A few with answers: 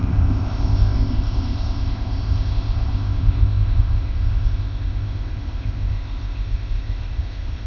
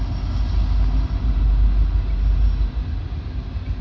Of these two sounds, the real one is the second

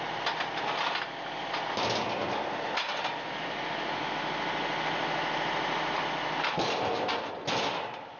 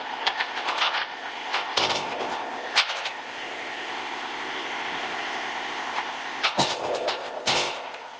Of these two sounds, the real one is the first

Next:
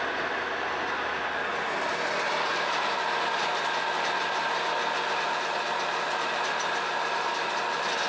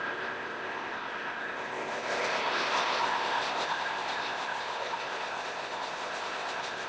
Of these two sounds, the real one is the first